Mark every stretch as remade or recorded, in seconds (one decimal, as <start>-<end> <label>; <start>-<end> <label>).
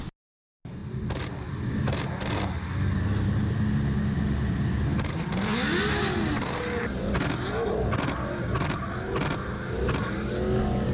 0.0-10.9 recorded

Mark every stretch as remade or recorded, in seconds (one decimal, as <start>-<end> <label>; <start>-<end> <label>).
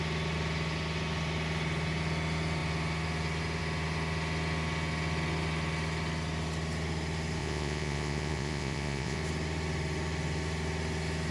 0.0-7.4 recorded; 7.4-9.2 remade; 9.2-11.3 recorded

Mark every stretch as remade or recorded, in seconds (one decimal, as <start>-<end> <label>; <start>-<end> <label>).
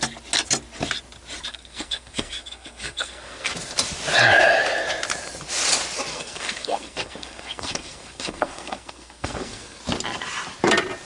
0.0-1.5 recorded; 1.5-3.5 remade; 3.5-6.1 recorded; 6.1-9.8 remade; 9.8-11.1 recorded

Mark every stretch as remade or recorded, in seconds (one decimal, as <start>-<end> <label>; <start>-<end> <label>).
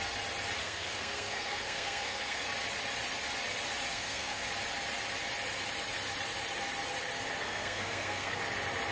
0.0-0.6 recorded; 0.6-2.4 remade; 2.4-3.9 recorded; 3.9-4.5 remade; 4.5-7.4 recorded; 7.4-8.4 remade; 8.4-8.9 recorded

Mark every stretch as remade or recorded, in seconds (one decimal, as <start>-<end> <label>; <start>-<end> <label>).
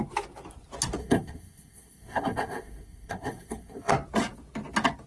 0.0-1.0 recorded; 1.0-3.9 remade; 3.9-5.1 recorded